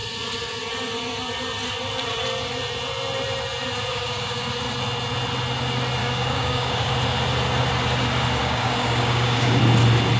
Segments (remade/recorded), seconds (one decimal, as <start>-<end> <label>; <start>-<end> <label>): 0.0-3.9 recorded; 3.9-4.5 remade; 4.5-6.0 recorded; 6.0-6.9 remade; 6.9-8.4 recorded; 8.4-9.6 remade; 9.6-10.2 recorded